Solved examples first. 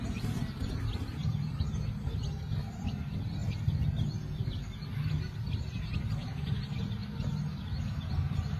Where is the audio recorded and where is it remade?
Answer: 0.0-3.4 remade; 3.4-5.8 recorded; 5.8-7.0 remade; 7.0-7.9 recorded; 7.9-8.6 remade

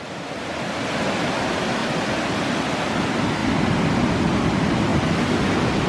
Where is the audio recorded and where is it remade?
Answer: 0.0-1.8 recorded; 1.8-2.9 remade; 2.9-4.9 recorded; 4.9-5.5 remade; 5.5-5.9 recorded

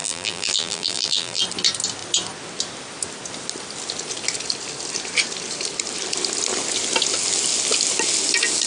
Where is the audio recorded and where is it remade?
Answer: 0.0-1.4 remade; 1.4-8.7 recorded

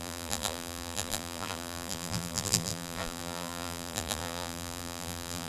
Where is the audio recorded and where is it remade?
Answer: 0.0-5.5 remade

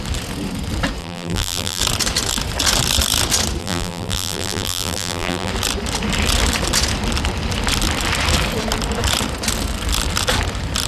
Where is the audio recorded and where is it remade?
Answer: 0.0-1.0 recorded; 1.0-1.8 remade; 1.8-3.6 recorded; 3.6-5.5 remade; 5.5-10.9 recorded